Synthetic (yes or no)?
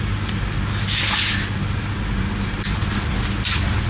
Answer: no